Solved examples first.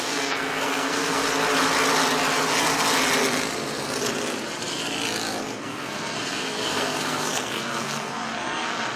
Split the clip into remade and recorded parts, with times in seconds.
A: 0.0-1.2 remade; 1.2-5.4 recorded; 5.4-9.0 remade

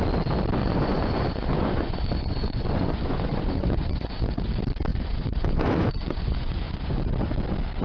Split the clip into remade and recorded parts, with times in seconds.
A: 0.0-0.6 recorded; 0.6-4.5 remade; 4.5-4.9 recorded; 4.9-7.0 remade; 7.0-7.8 recorded

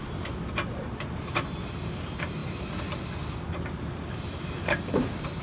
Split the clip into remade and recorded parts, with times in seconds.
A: 0.0-5.4 remade

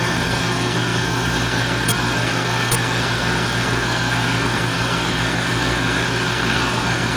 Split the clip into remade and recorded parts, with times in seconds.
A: 0.0-7.2 remade

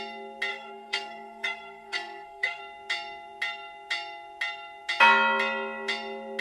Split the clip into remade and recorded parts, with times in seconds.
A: 0.0-0.5 recorded; 0.5-2.6 remade; 2.6-6.4 recorded

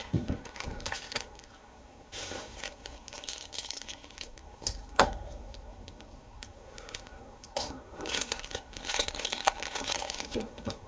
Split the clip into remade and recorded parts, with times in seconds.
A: 0.0-10.9 remade

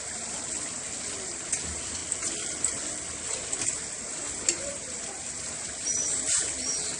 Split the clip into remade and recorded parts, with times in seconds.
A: 0.0-7.0 recorded

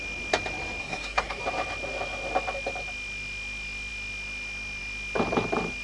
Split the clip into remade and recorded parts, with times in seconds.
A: 0.0-0.8 recorded; 0.8-1.4 remade; 1.4-5.8 recorded